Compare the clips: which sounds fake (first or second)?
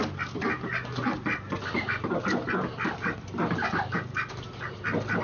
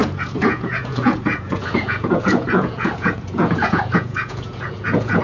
second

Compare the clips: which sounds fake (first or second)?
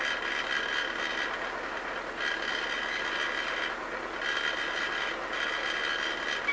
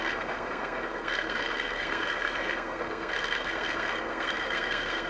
second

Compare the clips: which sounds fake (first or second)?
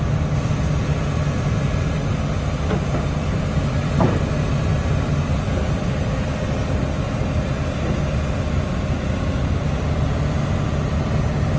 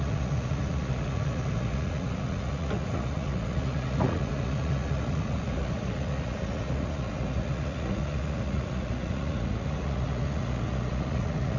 second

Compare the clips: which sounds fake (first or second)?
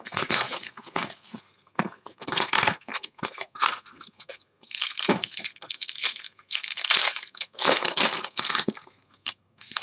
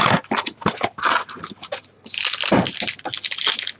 first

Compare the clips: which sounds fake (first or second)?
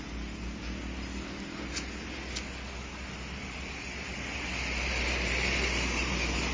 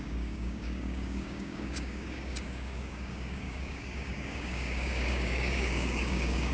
second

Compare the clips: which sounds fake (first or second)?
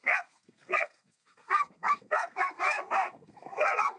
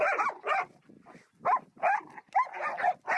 first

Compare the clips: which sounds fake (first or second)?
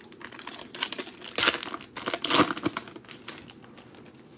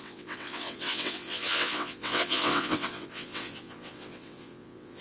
second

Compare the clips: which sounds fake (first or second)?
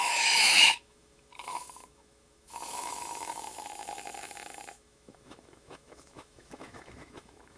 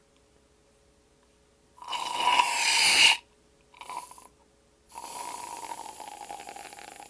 first